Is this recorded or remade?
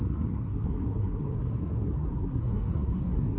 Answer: remade